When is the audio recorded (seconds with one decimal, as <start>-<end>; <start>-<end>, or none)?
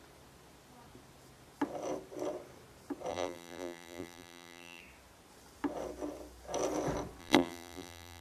0.0-3.1; 4.8-7.2